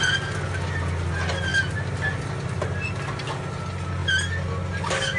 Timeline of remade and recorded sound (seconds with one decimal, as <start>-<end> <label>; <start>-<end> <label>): 0.0-5.2 recorded